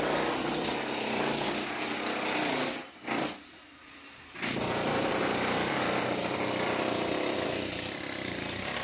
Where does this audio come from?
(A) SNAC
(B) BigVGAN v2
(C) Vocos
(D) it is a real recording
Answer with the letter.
B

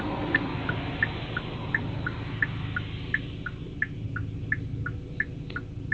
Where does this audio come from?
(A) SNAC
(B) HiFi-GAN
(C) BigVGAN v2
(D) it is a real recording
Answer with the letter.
D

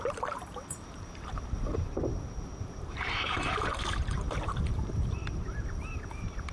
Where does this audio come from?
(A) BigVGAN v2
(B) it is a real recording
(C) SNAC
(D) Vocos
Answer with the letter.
A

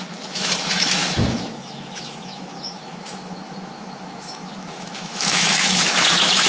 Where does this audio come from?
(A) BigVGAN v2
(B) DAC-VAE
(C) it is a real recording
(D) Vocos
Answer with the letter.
B